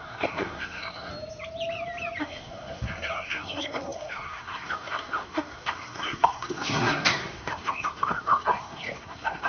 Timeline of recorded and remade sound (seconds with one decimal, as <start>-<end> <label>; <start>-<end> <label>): 0.0-1.1 remade; 1.1-2.2 recorded; 2.2-9.5 remade